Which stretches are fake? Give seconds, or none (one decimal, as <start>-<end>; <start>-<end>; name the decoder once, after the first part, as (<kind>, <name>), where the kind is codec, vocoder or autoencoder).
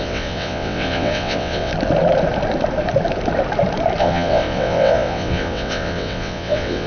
0.0-1.7 (vocoder, WaveNeXt); 4.0-6.9